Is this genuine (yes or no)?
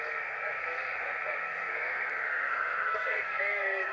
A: no